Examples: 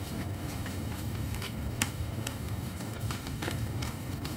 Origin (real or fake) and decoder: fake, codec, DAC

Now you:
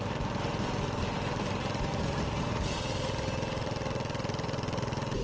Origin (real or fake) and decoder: real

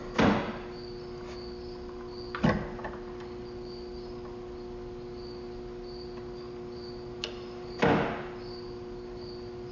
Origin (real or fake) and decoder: real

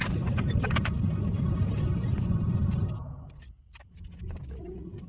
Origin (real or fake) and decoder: real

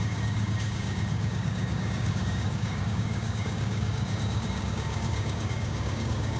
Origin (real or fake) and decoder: fake, codec, DAC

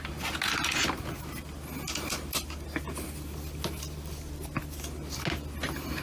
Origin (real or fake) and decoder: real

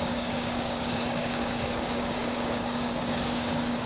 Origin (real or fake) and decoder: fake, codec, DAC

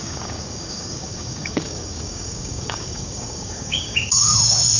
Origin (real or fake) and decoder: fake, codec, DAC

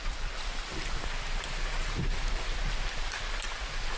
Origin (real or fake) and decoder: real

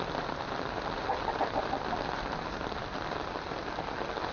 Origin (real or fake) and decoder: real